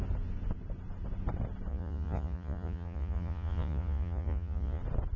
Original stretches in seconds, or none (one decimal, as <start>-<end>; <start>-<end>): 0.0-1.7; 4.8-5.2